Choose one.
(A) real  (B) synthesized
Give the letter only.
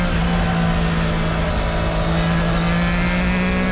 A